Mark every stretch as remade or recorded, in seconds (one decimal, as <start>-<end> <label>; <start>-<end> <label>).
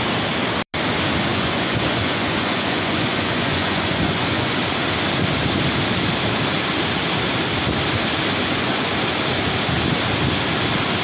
0.0-1.3 recorded; 1.3-4.6 remade; 4.6-8.4 recorded; 8.4-8.9 remade; 8.9-11.0 recorded